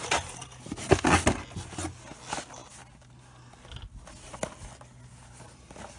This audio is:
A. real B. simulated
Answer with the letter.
A